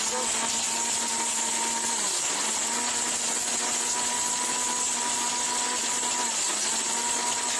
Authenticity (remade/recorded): recorded